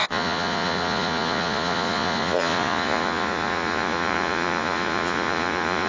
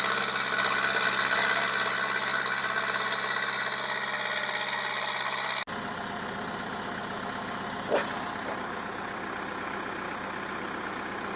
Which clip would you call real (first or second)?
second